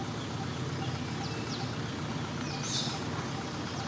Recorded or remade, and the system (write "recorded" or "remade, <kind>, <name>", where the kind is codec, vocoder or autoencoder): recorded